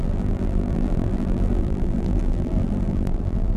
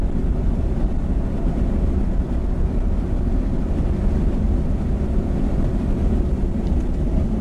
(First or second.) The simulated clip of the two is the first